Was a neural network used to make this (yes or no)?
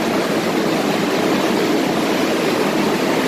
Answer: no